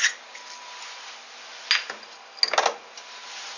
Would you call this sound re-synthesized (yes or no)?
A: no